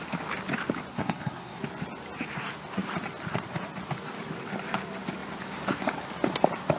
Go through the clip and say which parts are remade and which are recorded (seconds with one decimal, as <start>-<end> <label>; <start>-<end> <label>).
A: 0.0-0.9 recorded; 0.9-1.6 remade; 1.6-6.8 recorded